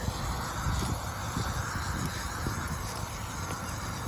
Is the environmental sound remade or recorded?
recorded